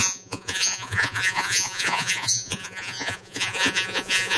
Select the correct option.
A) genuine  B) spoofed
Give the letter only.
B